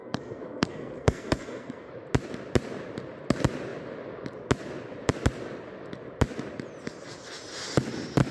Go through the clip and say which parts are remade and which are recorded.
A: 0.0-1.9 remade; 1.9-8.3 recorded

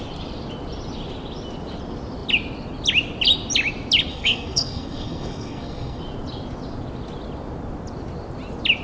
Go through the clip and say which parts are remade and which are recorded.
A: 0.0-4.1 recorded; 4.1-6.0 remade; 6.0-8.8 recorded

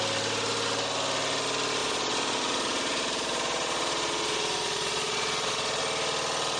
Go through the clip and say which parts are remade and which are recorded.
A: 0.0-1.8 recorded; 1.8-5.8 remade; 5.8-6.6 recorded